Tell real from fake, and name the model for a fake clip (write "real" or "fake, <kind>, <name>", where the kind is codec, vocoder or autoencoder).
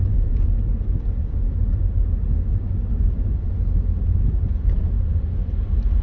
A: real